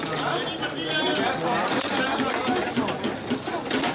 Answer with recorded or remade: recorded